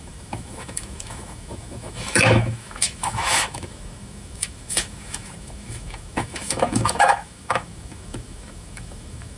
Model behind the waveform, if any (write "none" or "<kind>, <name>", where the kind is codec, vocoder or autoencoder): autoencoder, DAC-VAE